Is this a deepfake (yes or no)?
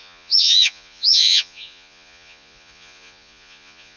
yes